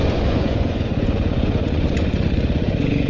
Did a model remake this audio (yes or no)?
yes